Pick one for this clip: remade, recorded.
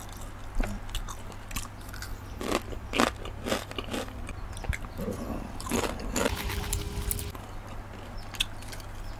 recorded